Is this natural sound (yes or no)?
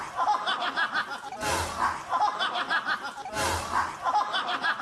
yes